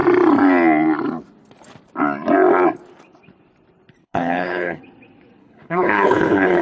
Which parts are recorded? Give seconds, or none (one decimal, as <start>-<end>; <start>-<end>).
0.0-4.0; 4.8-5.4